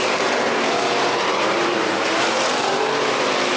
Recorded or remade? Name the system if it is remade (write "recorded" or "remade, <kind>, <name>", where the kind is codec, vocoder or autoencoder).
remade, vocoder, BigVGAN v2